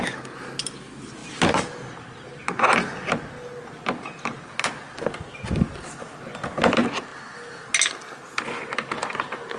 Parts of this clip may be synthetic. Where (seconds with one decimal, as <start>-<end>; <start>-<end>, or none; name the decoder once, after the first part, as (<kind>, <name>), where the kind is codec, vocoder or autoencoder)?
none